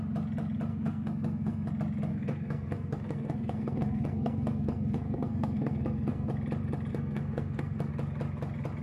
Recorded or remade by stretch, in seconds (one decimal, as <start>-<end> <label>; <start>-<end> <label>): 0.0-0.7 recorded; 0.7-1.7 remade; 1.7-2.1 recorded; 2.1-6.3 remade; 6.3-6.9 recorded; 6.9-7.9 remade; 7.9-8.8 recorded